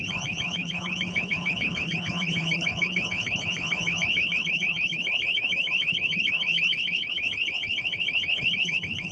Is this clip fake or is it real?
fake